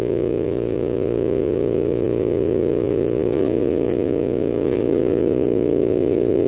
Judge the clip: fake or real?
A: fake